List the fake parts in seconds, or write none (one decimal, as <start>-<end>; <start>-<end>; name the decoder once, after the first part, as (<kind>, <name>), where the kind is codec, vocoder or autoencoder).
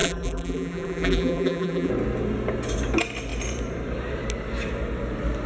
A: 0.0-1.9 (vocoder, BigVGAN v2)